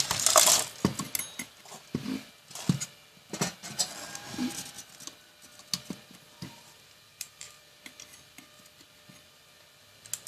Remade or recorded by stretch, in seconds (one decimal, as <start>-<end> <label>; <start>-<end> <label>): 0.0-7.1 recorded; 7.1-7.7 remade; 7.7-10.3 recorded